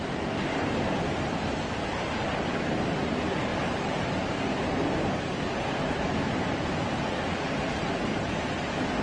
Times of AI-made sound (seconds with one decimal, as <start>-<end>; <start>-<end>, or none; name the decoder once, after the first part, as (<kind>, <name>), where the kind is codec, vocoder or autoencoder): 0.0-9.0 (vocoder, BigVGAN v2)